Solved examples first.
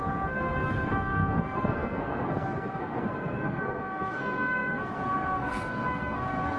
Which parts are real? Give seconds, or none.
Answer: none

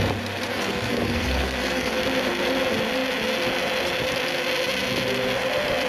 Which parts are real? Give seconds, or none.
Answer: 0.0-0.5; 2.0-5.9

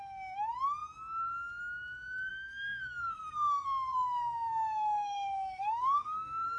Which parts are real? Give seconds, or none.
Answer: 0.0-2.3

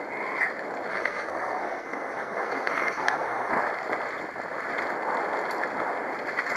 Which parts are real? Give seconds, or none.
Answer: 0.0-0.9; 3.5-6.6